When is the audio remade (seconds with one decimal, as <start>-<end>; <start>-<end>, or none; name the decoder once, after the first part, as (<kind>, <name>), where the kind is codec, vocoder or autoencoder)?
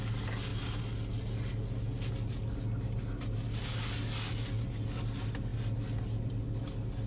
none